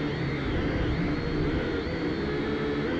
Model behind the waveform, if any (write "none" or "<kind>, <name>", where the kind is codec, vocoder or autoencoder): none